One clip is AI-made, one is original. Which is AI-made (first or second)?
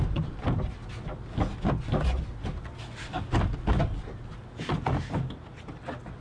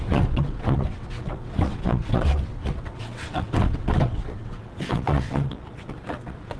second